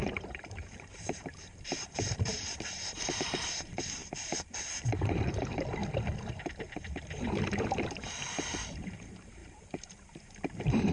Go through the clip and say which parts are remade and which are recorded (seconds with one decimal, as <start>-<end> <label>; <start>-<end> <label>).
0.0-5.8 remade; 5.8-8.8 recorded; 8.8-10.9 remade

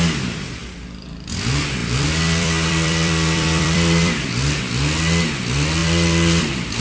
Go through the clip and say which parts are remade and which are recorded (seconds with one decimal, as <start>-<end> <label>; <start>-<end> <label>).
0.0-1.8 recorded; 1.8-4.6 remade; 4.6-5.8 recorded; 5.8-6.8 remade

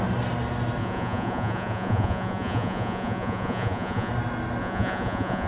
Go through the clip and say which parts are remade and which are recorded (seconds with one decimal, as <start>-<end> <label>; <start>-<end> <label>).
0.0-0.8 recorded; 0.8-4.1 remade; 4.1-4.6 recorded; 4.6-5.5 remade

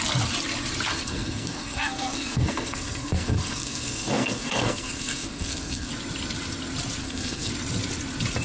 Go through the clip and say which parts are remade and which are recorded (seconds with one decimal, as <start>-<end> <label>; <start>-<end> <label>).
0.0-0.9 recorded; 0.9-5.9 remade; 5.9-7.0 recorded; 7.0-7.5 remade; 7.5-8.4 recorded

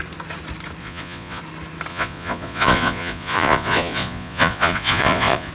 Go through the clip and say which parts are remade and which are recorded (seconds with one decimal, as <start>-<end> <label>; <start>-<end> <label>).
0.0-0.8 recorded; 0.8-1.4 remade; 1.4-1.9 recorded; 1.9-5.5 remade